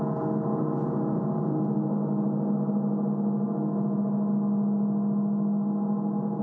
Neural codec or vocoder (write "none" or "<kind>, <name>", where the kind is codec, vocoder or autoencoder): none